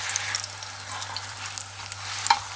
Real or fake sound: real